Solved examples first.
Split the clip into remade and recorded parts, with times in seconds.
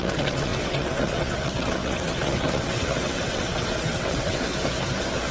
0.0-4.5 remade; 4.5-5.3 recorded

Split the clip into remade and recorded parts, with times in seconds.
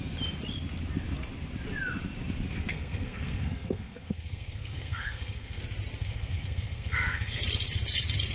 0.0-2.7 recorded; 2.7-5.6 remade; 5.6-6.0 recorded; 6.0-7.4 remade; 7.4-8.3 recorded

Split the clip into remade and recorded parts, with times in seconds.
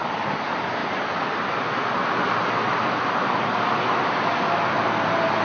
0.0-5.4 recorded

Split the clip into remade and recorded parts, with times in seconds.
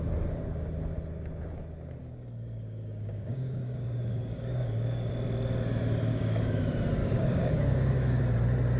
0.0-2.0 recorded; 2.0-5.1 remade; 5.1-6.1 recorded; 6.1-6.6 remade; 6.6-7.0 recorded; 7.0-8.2 remade; 8.2-8.8 recorded